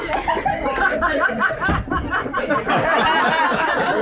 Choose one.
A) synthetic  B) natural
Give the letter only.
B